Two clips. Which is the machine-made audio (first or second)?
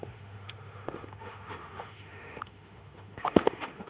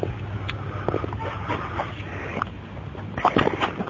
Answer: first